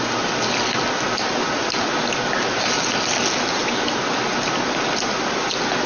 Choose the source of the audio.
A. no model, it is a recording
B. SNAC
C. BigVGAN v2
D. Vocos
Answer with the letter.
A